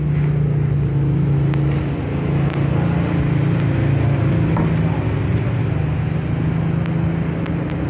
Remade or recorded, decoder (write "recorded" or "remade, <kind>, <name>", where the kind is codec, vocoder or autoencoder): recorded